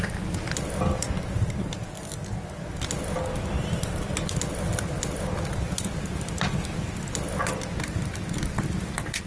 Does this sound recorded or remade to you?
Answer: recorded